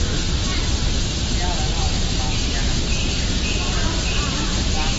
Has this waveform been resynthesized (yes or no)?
no